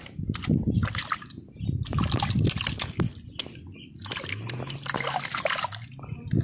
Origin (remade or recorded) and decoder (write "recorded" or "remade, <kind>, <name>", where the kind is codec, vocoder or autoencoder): recorded